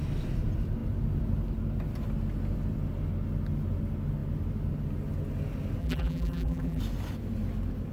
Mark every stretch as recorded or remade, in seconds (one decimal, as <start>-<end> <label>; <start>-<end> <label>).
0.0-5.8 recorded; 5.8-6.8 remade; 6.8-7.9 recorded